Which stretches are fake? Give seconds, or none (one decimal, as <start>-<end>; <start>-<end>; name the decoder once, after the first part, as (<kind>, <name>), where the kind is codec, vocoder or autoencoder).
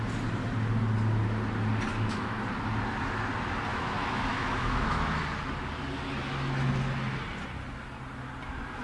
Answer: 1.9-2.4 (autoencoder, DAC-VAE); 3.7-5.2